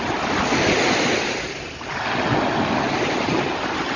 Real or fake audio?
real